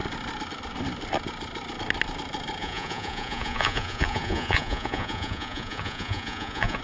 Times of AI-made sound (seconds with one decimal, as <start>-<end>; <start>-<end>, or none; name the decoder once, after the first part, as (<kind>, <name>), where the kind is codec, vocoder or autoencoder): 2.6-6.8 (vocoder, Vocos)